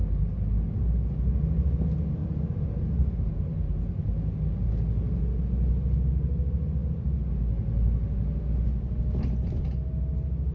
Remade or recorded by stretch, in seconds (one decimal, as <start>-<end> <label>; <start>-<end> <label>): 0.0-10.5 recorded